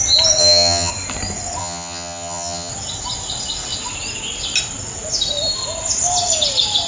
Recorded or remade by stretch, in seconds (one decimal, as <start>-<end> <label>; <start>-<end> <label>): 0.0-0.4 recorded; 0.4-0.9 remade; 0.9-1.6 recorded; 1.6-2.7 remade; 2.7-6.9 recorded